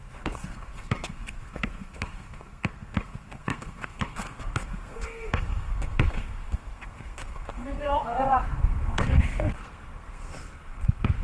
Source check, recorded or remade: remade